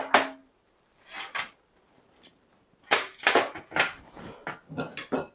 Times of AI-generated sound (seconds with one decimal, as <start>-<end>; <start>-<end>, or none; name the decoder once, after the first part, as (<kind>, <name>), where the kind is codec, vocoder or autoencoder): 0.4-3.6 (vocoder, BigVGAN v2)